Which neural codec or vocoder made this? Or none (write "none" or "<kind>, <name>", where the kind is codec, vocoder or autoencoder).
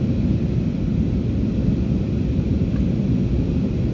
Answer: none